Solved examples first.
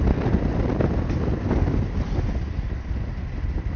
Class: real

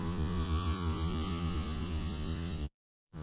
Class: fake